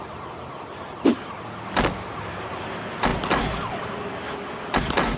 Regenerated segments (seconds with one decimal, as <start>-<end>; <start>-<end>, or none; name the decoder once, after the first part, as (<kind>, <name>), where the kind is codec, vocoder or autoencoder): none